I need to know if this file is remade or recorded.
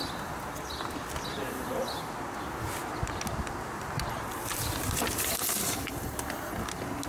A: recorded